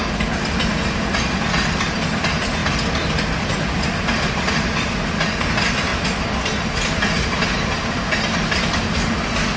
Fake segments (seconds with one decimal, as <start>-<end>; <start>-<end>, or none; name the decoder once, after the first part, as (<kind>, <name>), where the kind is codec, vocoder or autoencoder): none